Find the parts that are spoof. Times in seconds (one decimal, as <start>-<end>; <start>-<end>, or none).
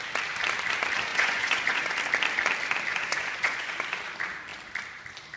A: 1.1-1.9; 2.9-3.7